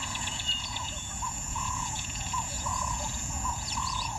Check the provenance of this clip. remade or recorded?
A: remade